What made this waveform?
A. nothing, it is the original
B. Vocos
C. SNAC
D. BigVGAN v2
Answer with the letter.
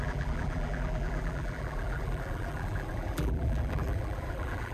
D